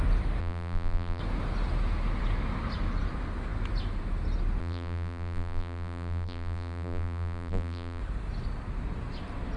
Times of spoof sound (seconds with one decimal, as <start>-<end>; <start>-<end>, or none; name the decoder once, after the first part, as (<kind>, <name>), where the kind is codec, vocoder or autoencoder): 0.4-1.2 (vocoder, BigVGAN v2); 4.6-8.0